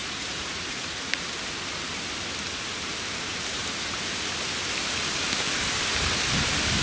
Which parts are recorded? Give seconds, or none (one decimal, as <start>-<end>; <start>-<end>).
1.2-6.8

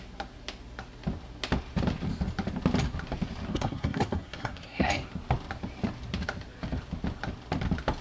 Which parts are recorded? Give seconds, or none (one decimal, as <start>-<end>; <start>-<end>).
0.0-3.5; 4.9-8.0

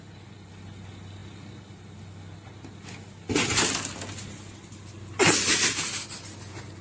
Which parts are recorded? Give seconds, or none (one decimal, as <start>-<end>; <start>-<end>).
0.0-6.8

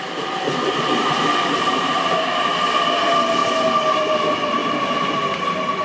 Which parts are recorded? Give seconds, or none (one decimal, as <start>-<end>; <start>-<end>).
none